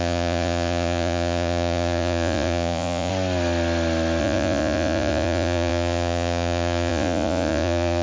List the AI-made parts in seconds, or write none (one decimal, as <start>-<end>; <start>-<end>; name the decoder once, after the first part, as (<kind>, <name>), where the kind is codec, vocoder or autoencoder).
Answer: 0.0-3.1 (vocoder, Vocos); 4.2-8.0